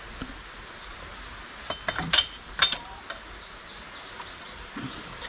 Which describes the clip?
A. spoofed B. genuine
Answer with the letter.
B